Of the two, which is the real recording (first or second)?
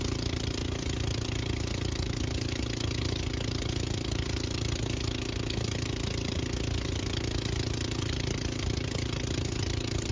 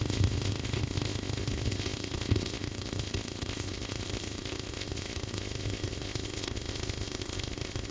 first